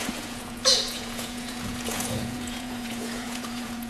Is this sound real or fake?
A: fake